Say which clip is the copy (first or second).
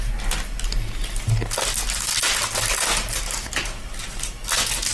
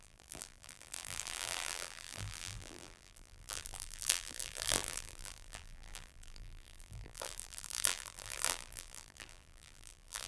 second